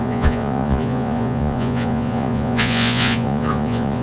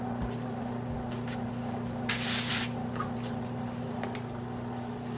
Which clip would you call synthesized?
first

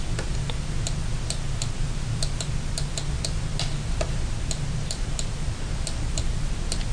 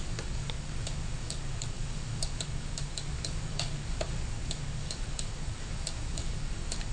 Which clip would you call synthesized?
second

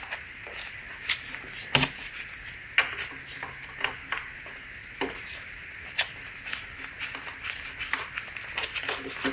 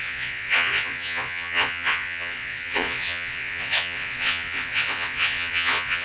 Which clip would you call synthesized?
second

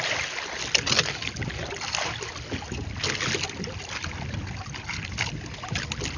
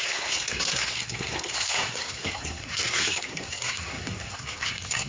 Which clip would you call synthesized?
second